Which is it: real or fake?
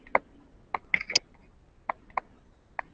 real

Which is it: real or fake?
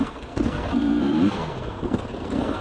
fake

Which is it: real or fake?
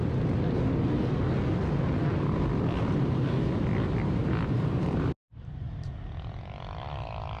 real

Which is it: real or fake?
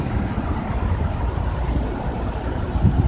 fake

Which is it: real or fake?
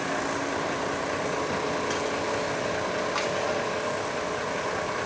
real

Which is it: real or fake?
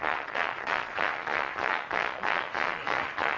fake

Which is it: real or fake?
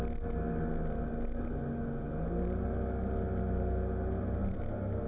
real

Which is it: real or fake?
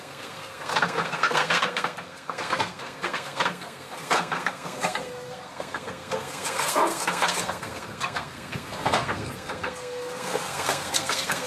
fake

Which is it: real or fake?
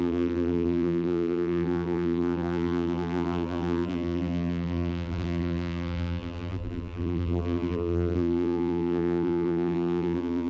fake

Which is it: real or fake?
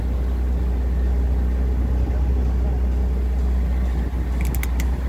real